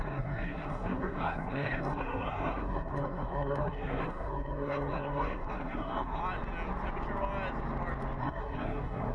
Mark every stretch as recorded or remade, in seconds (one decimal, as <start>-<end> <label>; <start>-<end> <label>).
0.0-6.2 remade; 6.2-8.2 recorded; 8.2-9.1 remade